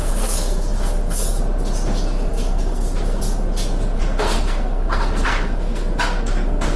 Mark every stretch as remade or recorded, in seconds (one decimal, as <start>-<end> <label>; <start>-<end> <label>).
0.0-1.4 remade; 1.4-2.3 recorded; 2.3-3.2 remade; 3.2-4.0 recorded; 4.0-6.8 remade